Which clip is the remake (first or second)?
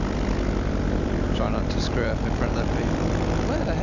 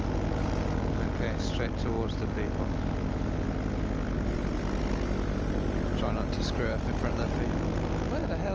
first